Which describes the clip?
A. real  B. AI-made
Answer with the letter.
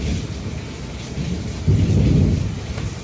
A